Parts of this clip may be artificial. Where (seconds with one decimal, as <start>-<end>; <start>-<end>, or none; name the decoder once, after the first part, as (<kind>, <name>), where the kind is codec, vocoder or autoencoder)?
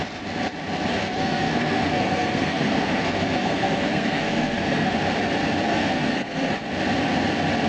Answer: 1.0-4.9 (codec, SNAC); 5.7-6.5